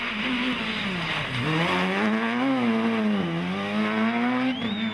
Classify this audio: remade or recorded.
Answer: recorded